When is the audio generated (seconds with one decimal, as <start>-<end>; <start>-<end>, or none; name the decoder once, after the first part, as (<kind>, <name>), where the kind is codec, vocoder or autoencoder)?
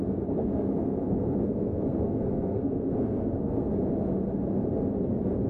0.4-3.7 (codec, SNAC)